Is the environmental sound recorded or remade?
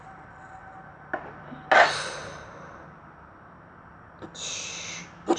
recorded